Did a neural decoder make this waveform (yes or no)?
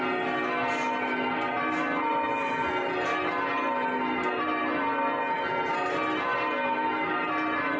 no